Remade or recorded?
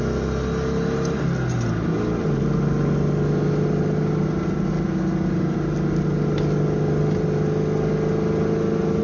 recorded